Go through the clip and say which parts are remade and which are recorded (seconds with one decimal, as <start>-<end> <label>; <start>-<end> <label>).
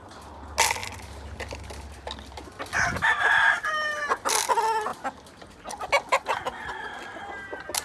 0.0-7.8 recorded